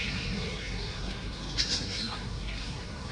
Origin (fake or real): fake